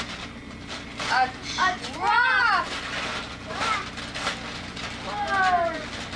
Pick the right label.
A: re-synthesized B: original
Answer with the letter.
B